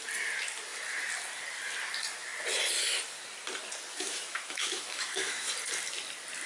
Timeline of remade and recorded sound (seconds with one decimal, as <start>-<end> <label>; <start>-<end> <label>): 0.0-3.9 recorded; 3.9-5.5 remade; 5.5-6.5 recorded